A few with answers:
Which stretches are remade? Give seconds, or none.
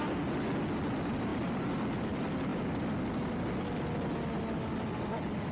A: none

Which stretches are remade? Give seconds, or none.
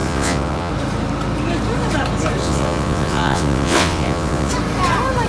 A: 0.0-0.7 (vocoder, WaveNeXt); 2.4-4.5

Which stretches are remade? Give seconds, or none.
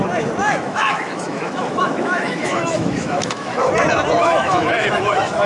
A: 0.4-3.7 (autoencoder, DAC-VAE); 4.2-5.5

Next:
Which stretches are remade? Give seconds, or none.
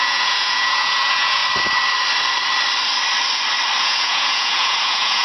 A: 0.0-1.4 (vocoder, Vocos); 3.8-5.2